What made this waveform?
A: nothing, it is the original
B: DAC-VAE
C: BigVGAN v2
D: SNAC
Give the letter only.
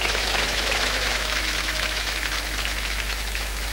B